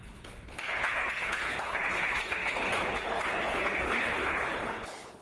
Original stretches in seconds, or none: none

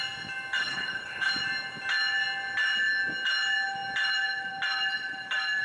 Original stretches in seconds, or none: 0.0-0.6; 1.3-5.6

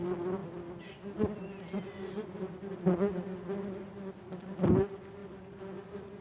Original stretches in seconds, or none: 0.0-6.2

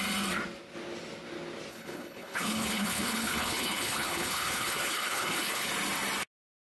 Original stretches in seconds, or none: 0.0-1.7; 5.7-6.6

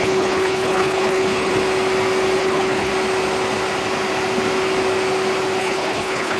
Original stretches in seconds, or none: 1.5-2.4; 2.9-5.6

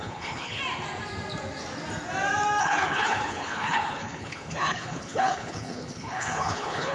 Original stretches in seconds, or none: 0.6-2.6